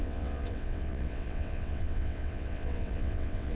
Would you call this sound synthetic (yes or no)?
yes